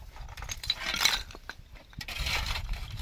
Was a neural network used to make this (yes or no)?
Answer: no